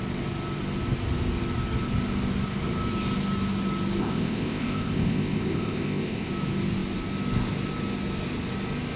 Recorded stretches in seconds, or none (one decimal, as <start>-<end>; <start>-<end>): 0.0-4.0; 6.3-9.0